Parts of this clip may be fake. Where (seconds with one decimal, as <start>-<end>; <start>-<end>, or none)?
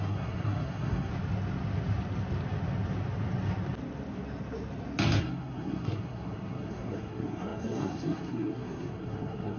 0.0-1.1; 5.2-9.6